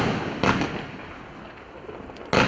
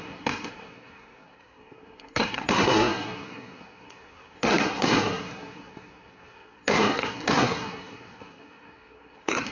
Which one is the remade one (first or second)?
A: second